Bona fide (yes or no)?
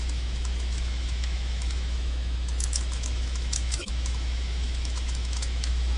no